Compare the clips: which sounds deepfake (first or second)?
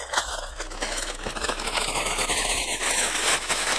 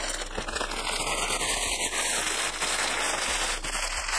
first